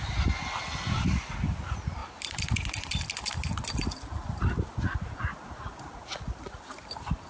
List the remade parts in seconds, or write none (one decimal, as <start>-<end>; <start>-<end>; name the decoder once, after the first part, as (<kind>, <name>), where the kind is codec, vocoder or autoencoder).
none

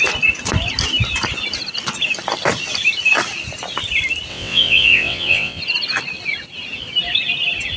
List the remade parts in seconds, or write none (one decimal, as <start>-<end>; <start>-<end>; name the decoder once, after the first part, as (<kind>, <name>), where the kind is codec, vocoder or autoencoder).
4.3-5.6 (vocoder, WaveNeXt)